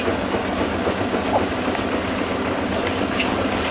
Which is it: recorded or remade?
recorded